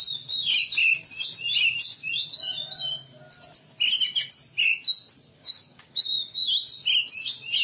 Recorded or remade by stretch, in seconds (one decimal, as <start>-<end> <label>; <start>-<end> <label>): 0.0-5.3 recorded; 5.3-6.5 remade; 6.5-7.6 recorded